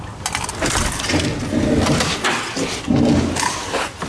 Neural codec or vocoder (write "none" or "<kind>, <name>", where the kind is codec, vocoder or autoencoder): none